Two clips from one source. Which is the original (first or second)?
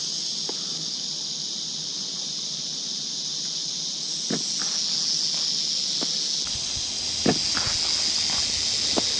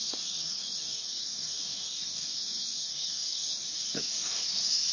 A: first